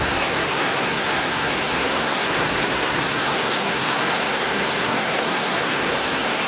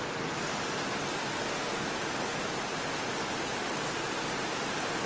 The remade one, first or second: first